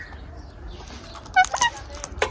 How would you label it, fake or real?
real